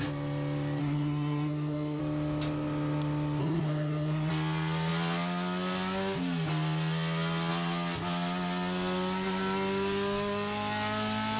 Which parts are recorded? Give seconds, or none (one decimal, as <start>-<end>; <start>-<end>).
0.0-0.8; 2.0-3.4; 4.3-11.4